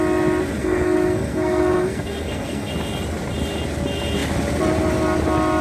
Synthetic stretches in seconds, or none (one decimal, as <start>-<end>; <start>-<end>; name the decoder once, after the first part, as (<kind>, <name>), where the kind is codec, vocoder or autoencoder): 0.6-2.7 (codec, SNAC)